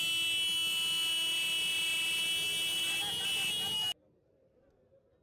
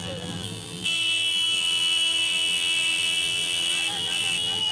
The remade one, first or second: second